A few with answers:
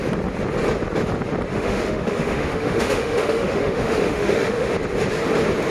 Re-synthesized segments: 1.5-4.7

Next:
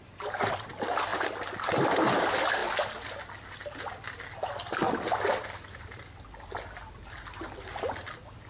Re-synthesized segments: none